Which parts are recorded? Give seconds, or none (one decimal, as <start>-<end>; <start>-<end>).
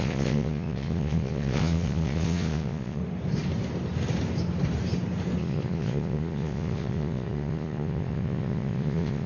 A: 3.0-5.4